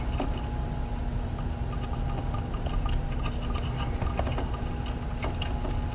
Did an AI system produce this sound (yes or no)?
no